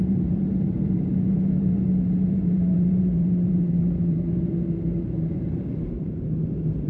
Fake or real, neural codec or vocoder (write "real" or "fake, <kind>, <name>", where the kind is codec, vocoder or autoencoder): fake, vocoder, BigVGAN v2